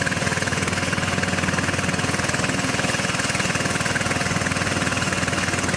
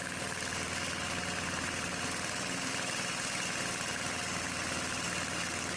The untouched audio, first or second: second